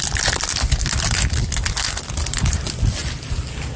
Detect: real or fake real